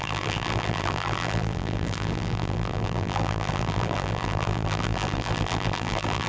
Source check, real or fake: fake